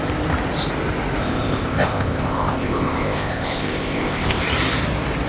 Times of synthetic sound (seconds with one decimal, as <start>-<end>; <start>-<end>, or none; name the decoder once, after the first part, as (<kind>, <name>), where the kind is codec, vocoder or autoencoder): 1.2-4.4 (codec, ZipCodec)